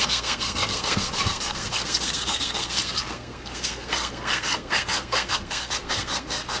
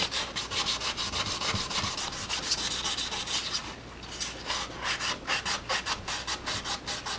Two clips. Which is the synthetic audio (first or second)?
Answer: first